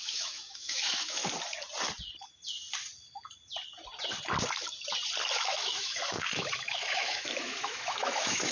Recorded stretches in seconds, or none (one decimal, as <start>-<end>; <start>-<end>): 1.2-5.3